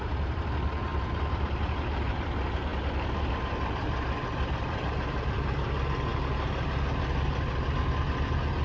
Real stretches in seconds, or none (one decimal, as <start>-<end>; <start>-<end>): 0.0-0.9; 2.1-2.7; 4.9-8.6